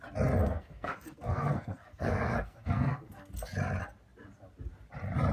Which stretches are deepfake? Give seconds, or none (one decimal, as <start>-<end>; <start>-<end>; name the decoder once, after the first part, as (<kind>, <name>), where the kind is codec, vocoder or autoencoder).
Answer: 0.4-3.3 (codec, SNAC)